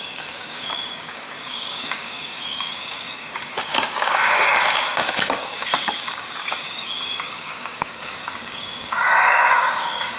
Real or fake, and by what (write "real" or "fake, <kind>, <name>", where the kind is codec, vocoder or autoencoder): fake, codec, DAC